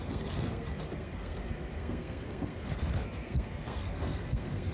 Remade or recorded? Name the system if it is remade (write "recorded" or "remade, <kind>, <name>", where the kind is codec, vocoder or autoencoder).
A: remade, codec, SNAC